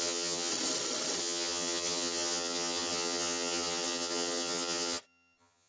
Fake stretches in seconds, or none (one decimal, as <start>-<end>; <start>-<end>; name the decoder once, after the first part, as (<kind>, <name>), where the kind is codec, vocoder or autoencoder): 0.0-0.5 (vocoder, HiFi-GAN); 1.2-5.7

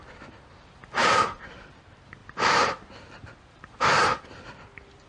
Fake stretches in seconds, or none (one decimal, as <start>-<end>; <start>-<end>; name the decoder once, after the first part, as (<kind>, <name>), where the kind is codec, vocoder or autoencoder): 1.0-1.7 (vocoder, BigVGAN v2); 2.2-4.2

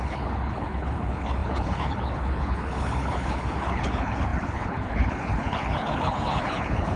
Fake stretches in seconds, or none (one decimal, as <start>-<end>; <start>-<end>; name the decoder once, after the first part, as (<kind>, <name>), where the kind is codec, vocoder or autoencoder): 0.0-7.0 (codec, HILCodec)

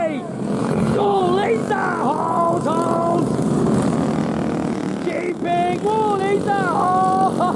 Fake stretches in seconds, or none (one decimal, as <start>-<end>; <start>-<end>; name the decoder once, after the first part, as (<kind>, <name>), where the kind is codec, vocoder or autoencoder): 0.6-1.2 (codec, HILCodec)

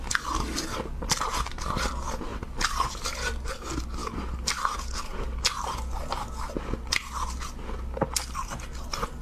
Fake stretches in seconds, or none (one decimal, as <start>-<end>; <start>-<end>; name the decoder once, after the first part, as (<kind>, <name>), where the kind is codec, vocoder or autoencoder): none

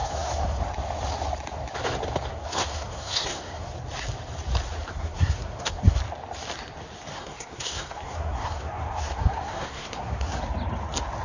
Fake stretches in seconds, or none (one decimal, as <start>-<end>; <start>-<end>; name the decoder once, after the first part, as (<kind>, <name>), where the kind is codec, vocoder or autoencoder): 0.0-0.6 (codec, SNAC); 2.3-3.7; 4.9-6.0; 7.1-10.4

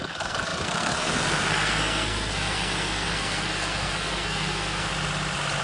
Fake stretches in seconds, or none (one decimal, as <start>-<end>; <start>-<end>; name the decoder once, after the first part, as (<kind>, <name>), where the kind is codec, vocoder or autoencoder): 0.0-4.9 (codec, SNAC)

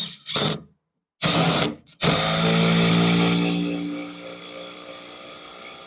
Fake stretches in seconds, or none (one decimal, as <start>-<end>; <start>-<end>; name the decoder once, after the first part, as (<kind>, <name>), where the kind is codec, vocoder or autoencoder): none